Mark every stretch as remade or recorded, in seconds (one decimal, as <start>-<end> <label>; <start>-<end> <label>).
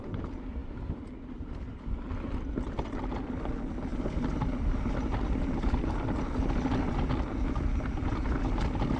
0.0-3.9 recorded; 3.9-4.6 remade; 4.6-9.0 recorded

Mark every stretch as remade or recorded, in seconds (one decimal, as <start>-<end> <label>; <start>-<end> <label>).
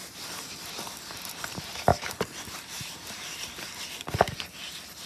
0.0-0.8 remade; 0.8-5.1 recorded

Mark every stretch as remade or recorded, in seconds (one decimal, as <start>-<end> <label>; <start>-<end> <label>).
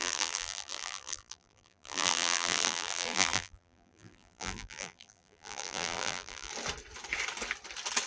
0.0-6.5 remade; 6.5-8.1 recorded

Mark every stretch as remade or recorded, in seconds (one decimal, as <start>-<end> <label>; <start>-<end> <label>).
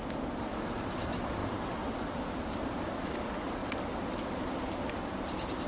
0.0-3.6 remade; 3.6-5.0 recorded; 5.0-5.7 remade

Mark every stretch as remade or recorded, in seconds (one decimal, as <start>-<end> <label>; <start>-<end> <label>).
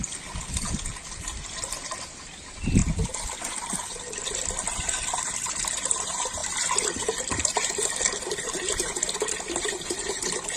0.0-10.6 recorded